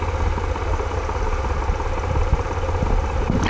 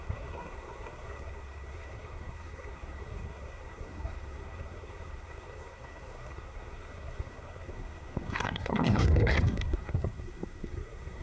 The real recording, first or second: first